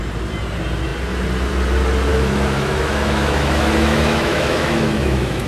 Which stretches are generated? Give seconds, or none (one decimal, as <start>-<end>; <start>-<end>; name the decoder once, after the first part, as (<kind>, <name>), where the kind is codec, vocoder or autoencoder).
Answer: 2.1-5.5 (autoencoder, DAC-VAE)